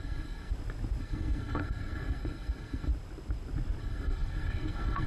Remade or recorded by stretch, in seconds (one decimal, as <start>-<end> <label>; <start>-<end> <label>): 0.0-0.5 remade; 0.5-1.0 recorded; 1.0-2.9 remade; 2.9-3.8 recorded; 3.8-5.1 remade